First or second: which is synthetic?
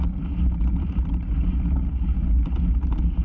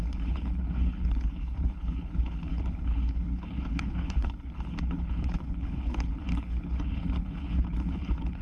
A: second